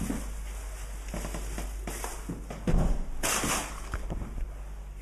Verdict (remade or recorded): recorded